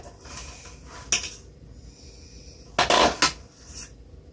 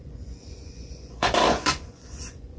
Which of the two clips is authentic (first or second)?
first